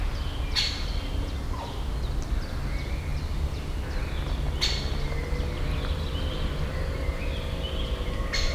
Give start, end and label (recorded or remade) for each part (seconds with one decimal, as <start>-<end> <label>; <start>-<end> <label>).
0.0-8.5 recorded